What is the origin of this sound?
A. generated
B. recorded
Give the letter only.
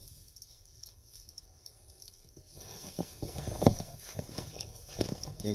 A